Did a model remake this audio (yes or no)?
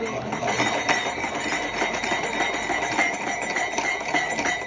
no